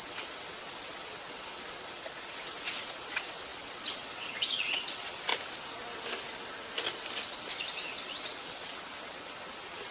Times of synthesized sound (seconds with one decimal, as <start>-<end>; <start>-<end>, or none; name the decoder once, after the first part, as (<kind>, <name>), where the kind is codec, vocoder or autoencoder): 0.0-5.3 (vocoder, WaveNeXt); 7.5-9.9